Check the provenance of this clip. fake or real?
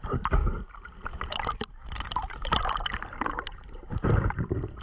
real